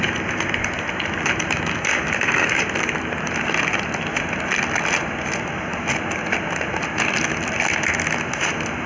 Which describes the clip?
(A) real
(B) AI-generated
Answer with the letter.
A